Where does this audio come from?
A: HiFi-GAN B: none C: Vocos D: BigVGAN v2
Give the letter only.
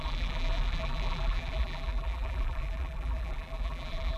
D